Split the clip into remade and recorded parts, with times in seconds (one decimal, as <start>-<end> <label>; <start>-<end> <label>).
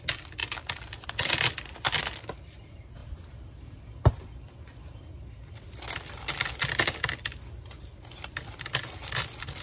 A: 0.0-9.6 recorded